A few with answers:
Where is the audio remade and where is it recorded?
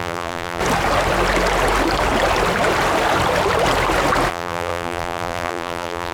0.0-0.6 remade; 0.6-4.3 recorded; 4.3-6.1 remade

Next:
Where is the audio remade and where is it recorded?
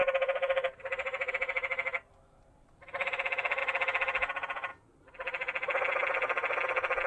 0.0-1.3 remade; 1.3-7.1 recorded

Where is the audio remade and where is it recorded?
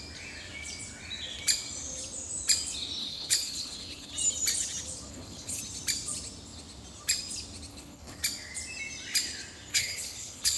0.0-3.0 recorded; 3.0-4.1 remade; 4.1-5.1 recorded; 5.1-5.6 remade; 5.6-7.7 recorded; 7.7-8.2 remade; 8.2-9.7 recorded; 9.7-10.6 remade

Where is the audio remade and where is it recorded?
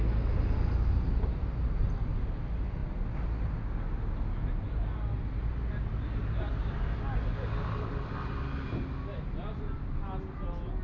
0.0-10.8 recorded